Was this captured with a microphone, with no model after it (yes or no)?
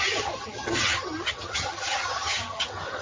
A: no